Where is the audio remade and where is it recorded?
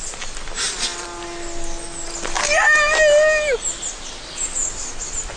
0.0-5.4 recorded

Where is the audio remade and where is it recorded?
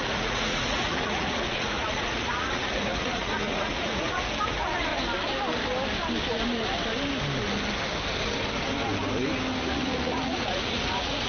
0.0-4.9 remade; 4.9-9.6 recorded; 9.6-11.3 remade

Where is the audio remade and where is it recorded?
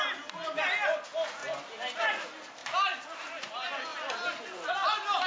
0.0-2.6 recorded; 2.6-3.5 remade; 3.5-5.3 recorded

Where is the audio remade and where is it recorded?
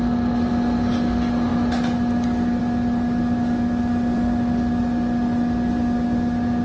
0.0-6.6 recorded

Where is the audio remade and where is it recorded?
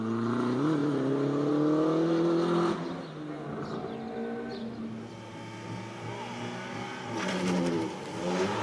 0.0-8.6 recorded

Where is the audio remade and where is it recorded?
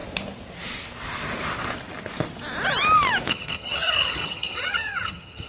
0.0-3.3 recorded; 3.3-5.5 remade